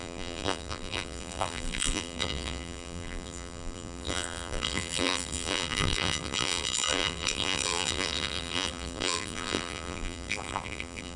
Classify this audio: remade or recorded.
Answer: remade